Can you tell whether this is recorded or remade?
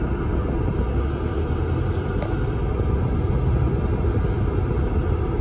recorded